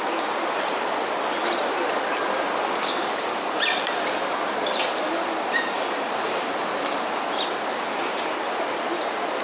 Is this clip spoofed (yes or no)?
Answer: no